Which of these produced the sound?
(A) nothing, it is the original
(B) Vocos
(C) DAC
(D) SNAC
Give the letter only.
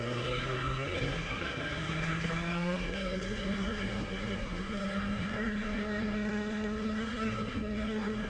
D